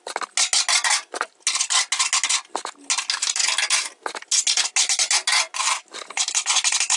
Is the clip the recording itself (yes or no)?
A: yes